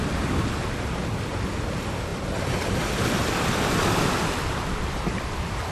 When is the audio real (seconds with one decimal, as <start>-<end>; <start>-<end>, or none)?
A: 0.0-2.1